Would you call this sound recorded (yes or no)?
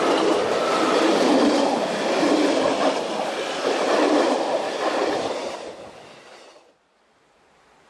yes